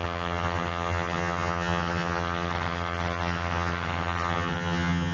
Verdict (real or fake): fake